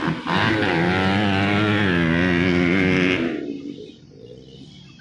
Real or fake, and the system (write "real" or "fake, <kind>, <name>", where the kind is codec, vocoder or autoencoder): real